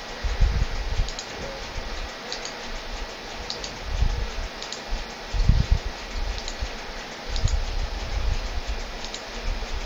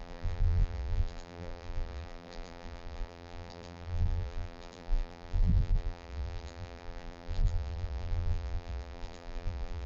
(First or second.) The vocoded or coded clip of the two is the second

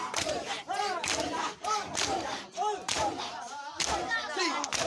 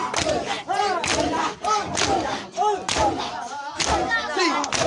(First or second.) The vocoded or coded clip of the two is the first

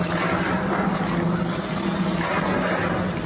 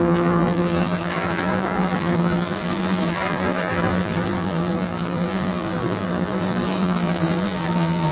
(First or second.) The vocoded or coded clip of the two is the second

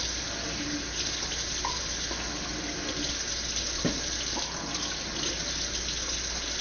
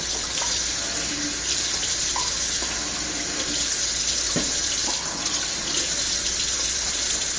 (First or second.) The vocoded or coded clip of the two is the second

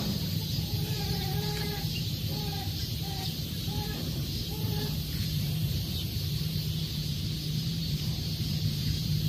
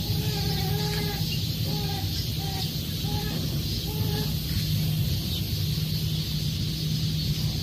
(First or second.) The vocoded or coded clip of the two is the first